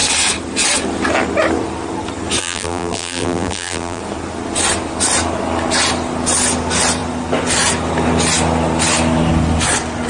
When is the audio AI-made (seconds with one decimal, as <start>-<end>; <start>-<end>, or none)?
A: 2.4-4.0